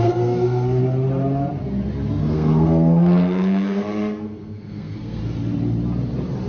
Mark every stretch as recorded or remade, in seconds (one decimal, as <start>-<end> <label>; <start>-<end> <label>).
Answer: 0.0-0.8 remade; 0.8-2.2 recorded; 2.2-5.2 remade; 5.2-6.5 recorded